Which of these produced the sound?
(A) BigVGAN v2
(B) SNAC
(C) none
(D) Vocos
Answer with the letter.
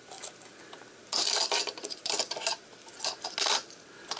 C